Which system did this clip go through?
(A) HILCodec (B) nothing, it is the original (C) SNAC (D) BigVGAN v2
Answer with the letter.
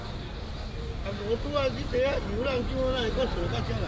B